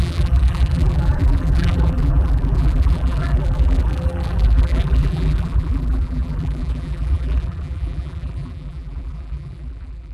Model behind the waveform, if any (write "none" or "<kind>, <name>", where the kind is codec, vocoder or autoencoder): vocoder, BigVGAN v2